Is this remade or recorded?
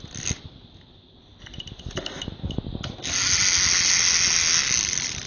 recorded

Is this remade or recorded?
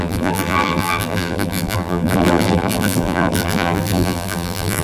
remade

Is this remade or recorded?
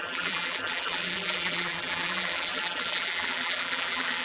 remade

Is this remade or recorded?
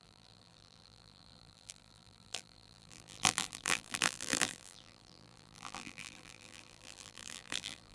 remade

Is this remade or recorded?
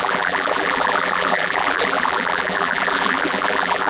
remade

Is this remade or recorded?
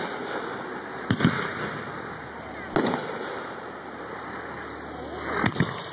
recorded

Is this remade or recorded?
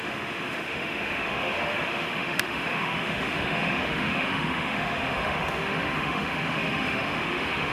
remade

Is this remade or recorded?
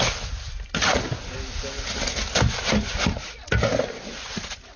recorded